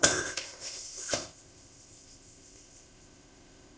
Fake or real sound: fake